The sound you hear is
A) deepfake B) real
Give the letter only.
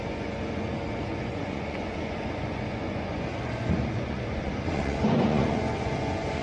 A